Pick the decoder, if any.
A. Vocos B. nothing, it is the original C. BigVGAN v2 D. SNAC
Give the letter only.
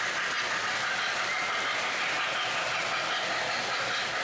B